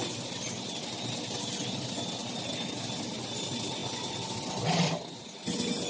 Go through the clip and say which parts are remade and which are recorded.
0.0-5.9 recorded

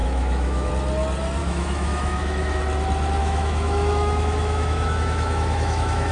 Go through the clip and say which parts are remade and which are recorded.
0.0-0.7 remade; 0.7-1.4 recorded; 1.4-2.6 remade; 2.6-3.2 recorded; 3.2-6.1 remade

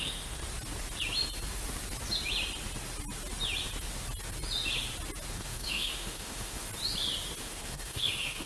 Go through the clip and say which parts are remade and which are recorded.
0.0-0.4 remade; 0.4-5.3 recorded; 5.3-6.7 remade; 6.7-7.4 recorded; 7.4-8.5 remade

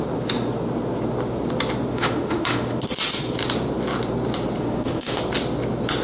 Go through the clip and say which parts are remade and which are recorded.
0.0-1.9 recorded; 1.9-2.8 remade; 2.8-4.6 recorded; 4.6-5.2 remade; 5.2-6.0 recorded

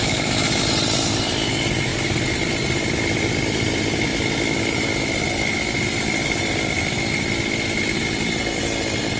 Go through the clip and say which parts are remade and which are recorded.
0.0-0.6 remade; 0.6-9.2 recorded

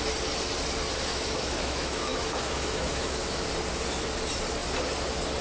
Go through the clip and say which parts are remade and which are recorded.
0.0-1.1 recorded; 1.1-3.5 remade; 3.5-5.4 recorded

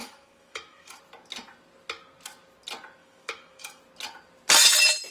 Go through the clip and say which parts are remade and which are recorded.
0.0-1.0 remade; 1.0-3.0 recorded; 3.0-3.8 remade; 3.8-5.1 recorded